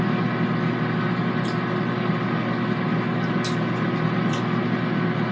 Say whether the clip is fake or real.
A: real